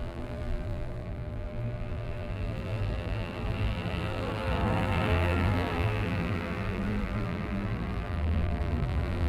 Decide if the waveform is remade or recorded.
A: remade